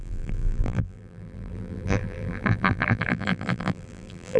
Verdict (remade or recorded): remade